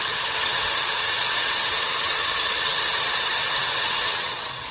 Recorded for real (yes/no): no